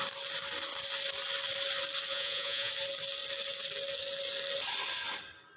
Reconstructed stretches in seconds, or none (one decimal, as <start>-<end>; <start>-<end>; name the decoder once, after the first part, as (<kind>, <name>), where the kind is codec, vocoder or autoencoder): 2.1-2.7 (vocoder, Vocos)